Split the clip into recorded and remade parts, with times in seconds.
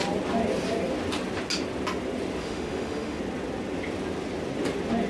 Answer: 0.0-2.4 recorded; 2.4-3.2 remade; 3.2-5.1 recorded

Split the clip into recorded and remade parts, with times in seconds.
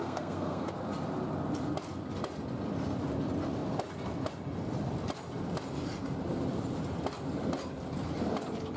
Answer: 0.0-0.7 remade; 0.7-8.8 recorded